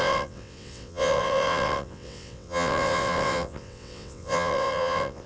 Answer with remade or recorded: remade